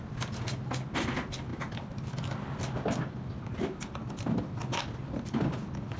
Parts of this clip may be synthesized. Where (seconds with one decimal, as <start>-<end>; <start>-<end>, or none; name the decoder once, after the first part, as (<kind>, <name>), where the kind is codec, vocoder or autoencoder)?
none